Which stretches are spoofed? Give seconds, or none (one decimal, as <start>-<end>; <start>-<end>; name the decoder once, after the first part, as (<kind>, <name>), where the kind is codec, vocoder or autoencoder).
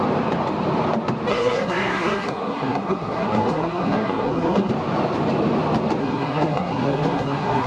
1.3-4.7 (codec, SNAC); 6.0-7.7